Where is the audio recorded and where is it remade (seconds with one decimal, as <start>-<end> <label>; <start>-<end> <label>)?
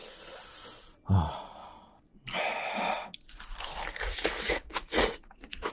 0.0-0.8 recorded; 0.8-1.6 remade; 1.6-4.0 recorded; 4.0-5.7 remade